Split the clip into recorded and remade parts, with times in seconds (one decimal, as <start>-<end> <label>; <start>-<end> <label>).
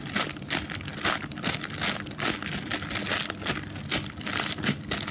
0.0-5.1 recorded